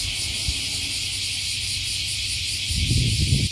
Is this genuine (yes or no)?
yes